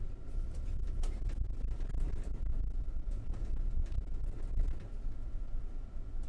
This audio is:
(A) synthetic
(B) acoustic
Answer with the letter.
B